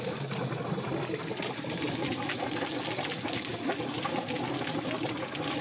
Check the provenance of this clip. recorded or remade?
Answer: recorded